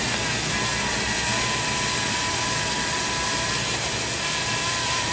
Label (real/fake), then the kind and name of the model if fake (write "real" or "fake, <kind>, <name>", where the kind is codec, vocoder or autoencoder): real